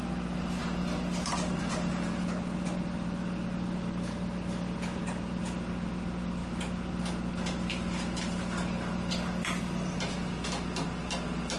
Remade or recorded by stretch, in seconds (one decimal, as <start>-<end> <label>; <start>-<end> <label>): 0.0-11.6 recorded